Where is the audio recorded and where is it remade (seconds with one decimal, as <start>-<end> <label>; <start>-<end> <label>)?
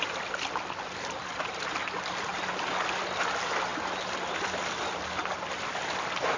0.0-6.4 recorded